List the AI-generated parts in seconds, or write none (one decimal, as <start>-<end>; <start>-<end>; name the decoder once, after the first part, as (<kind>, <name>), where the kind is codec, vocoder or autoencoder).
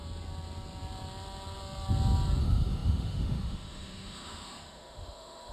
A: 2.4-5.5 (autoencoder, DAC-VAE)